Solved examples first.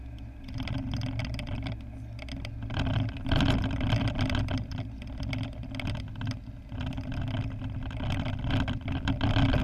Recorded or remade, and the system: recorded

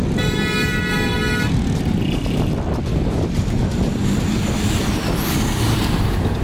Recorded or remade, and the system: recorded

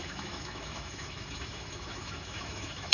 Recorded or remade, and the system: remade, autoencoder, DAC-VAE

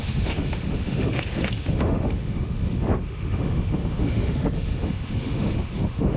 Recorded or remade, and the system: remade, autoencoder, DAC-VAE